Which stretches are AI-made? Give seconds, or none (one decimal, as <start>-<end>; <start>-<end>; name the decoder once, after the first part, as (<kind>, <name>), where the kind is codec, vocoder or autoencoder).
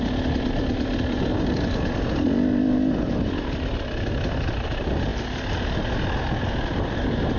none